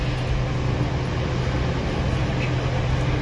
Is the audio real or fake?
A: real